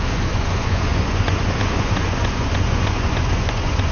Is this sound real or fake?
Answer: fake